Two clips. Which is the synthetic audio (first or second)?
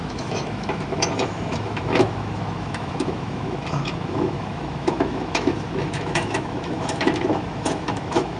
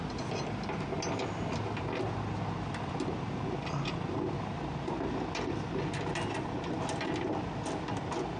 first